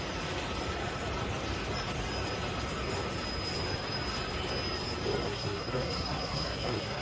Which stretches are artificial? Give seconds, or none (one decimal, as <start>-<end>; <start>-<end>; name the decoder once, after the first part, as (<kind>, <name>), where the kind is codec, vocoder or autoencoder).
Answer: 5.2-7.0 (codec, SNAC)